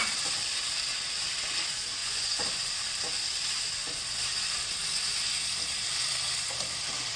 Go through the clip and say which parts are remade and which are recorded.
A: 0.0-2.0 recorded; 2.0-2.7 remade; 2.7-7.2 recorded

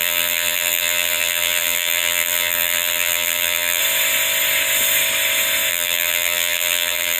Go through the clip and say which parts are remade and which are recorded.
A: 0.0-3.8 remade; 3.8-5.7 recorded; 5.7-7.2 remade

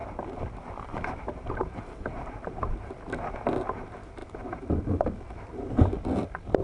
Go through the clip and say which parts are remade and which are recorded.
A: 0.0-2.7 remade; 2.7-4.2 recorded; 4.2-5.7 remade; 5.7-6.6 recorded

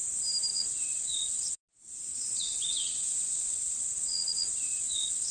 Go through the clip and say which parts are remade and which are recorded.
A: 0.0-0.5 recorded; 0.5-1.6 remade; 1.6-2.1 recorded; 2.1-5.3 remade

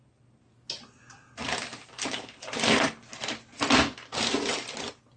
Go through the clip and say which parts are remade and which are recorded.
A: 0.0-5.2 recorded